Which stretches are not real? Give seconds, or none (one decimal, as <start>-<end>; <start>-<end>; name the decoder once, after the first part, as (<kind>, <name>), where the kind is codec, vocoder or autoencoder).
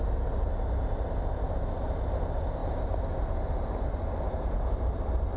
none